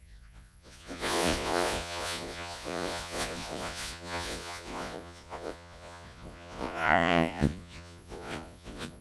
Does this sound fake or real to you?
fake